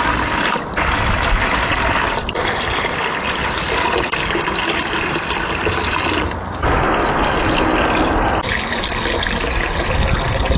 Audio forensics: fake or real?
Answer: real